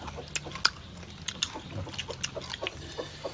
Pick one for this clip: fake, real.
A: real